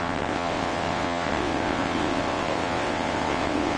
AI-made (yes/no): yes